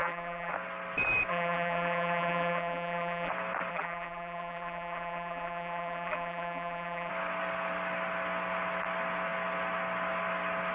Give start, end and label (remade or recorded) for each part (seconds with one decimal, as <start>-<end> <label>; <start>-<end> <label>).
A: 0.0-0.5 remade; 0.5-1.3 recorded; 1.3-3.3 remade; 3.3-3.7 recorded; 3.7-7.1 remade; 7.1-10.7 recorded